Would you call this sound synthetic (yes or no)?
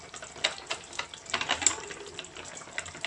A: no